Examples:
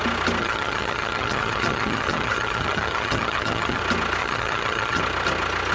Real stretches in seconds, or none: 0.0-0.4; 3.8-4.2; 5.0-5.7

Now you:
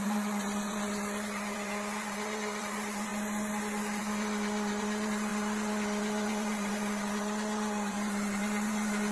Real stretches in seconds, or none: 3.1-4.0

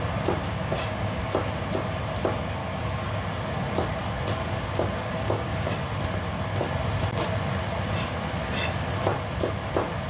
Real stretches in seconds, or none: 0.0-0.4; 1.2-2.6; 3.1-5.2; 5.8-10.1